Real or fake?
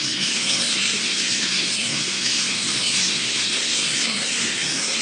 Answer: fake